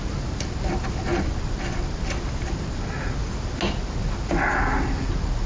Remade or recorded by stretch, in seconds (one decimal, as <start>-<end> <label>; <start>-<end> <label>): 0.0-5.5 recorded